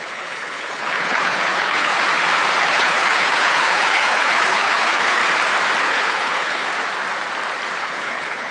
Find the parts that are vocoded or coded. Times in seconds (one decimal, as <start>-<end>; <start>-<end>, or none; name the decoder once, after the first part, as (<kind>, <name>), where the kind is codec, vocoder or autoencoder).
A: 0.0-1.9 (codec, HILCodec); 2.6-5.2; 5.8-6.7; 7.8-8.5